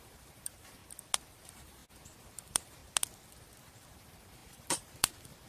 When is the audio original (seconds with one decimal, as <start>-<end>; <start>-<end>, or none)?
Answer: 0.8-1.3; 1.8-2.4; 2.8-3.9